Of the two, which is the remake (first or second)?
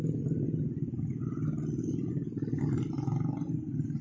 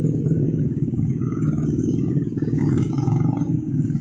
second